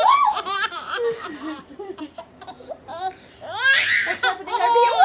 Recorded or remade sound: remade